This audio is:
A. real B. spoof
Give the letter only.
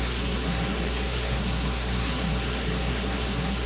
B